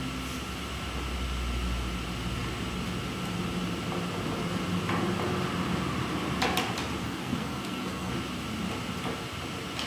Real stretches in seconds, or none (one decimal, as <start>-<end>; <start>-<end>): 0.0-7.0; 8.1-9.9

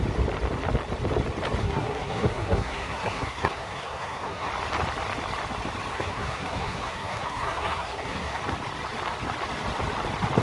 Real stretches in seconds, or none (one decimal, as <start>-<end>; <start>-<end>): 0.0-1.6; 4.5-5.9; 8.4-10.4

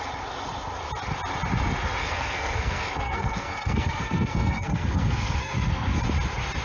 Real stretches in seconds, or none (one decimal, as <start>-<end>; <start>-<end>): 0.0-2.0; 6.0-6.6

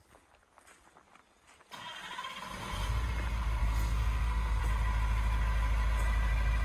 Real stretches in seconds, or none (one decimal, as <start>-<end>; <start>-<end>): 0.0-3.6; 4.6-6.6

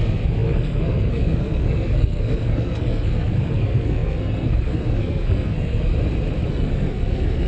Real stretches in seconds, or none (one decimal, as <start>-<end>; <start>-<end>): 5.9-6.5